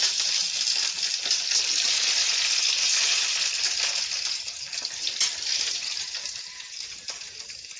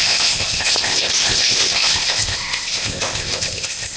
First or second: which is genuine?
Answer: first